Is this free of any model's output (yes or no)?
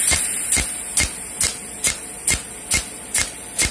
yes